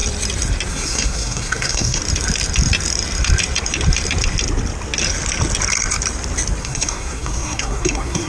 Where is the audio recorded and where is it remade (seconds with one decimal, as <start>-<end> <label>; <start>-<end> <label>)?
0.0-0.7 recorded; 0.7-2.0 remade; 2.0-6.6 recorded; 6.6-8.3 remade